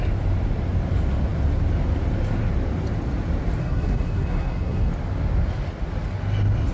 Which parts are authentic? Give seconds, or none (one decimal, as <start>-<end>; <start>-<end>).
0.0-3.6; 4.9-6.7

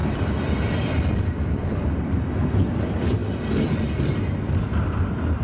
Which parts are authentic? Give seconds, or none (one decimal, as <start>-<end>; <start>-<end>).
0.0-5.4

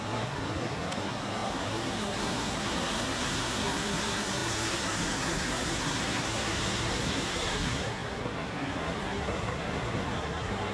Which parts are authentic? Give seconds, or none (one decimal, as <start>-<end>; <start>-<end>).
none